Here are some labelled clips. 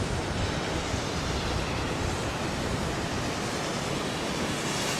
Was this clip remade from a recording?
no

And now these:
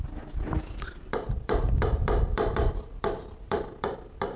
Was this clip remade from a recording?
yes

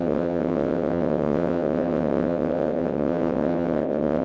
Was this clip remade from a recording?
yes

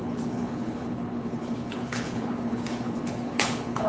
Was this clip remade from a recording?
yes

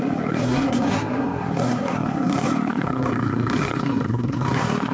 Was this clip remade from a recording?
yes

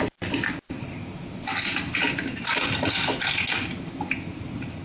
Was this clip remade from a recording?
no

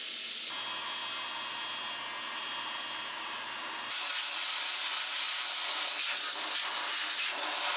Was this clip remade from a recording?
no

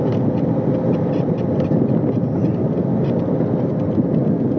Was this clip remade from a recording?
yes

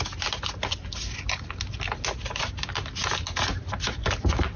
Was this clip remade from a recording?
no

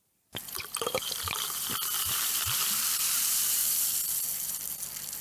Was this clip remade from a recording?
yes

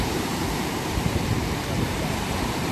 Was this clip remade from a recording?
yes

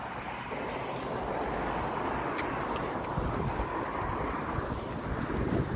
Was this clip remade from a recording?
no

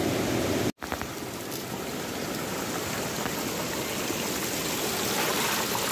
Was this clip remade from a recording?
no